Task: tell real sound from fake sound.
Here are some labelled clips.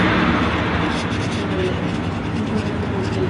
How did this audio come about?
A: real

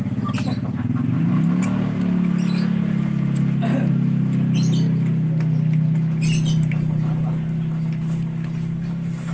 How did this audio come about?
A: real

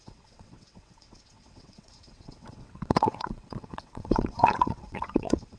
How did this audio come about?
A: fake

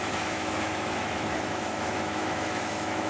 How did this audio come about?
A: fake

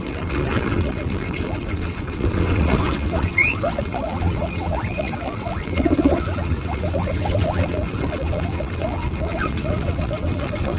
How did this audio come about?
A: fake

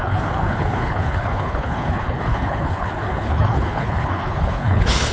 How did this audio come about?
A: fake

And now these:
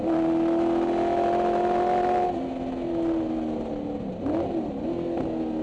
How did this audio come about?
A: real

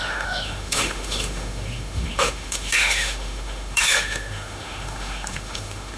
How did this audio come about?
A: fake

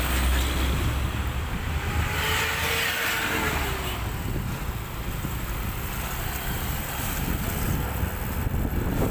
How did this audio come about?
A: real